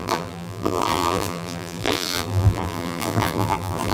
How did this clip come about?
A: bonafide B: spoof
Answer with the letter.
B